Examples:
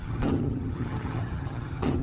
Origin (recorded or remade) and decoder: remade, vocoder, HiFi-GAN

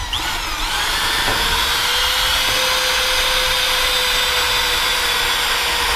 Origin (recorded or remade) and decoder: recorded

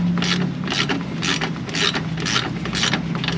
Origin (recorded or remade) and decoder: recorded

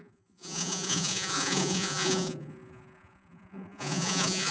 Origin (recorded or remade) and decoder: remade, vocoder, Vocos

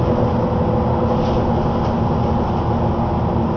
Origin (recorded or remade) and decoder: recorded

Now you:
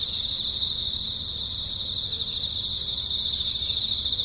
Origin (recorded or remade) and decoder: recorded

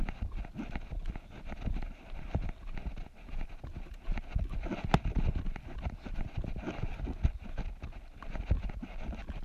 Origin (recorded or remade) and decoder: recorded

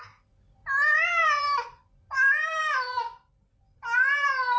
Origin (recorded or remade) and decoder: remade, vocoder, BigVGAN v2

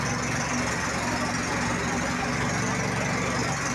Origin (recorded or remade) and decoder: recorded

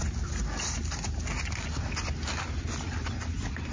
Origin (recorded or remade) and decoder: recorded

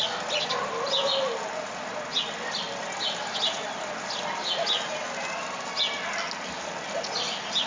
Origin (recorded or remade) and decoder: recorded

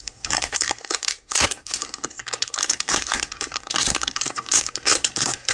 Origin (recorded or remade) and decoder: remade, codec, SNAC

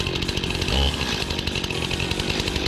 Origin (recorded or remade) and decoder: recorded